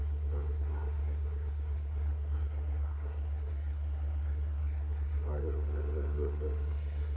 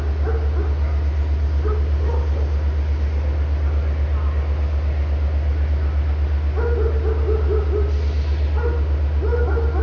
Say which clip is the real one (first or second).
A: second